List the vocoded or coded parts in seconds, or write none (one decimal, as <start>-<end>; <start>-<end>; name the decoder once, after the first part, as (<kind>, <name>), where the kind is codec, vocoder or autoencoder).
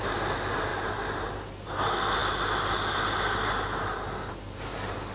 0.7-1.3 (vocoder, BigVGAN v2)